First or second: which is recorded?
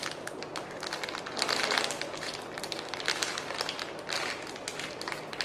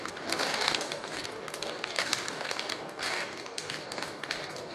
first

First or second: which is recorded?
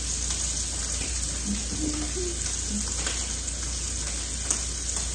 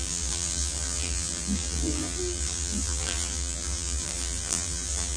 first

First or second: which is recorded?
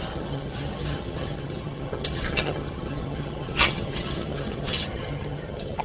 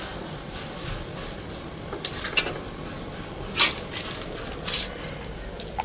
second